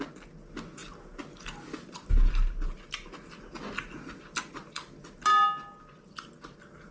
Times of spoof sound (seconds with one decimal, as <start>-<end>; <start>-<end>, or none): none